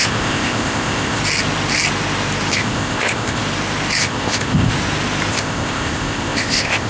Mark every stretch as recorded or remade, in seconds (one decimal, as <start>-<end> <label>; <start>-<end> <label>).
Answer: 0.0-1.2 remade; 1.2-2.5 recorded; 2.5-3.4 remade; 3.4-4.0 recorded; 4.0-4.7 remade; 4.7-5.3 recorded; 5.3-6.9 remade